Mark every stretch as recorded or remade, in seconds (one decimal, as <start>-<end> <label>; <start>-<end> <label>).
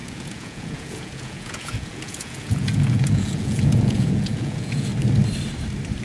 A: 0.0-4.9 remade; 4.9-6.0 recorded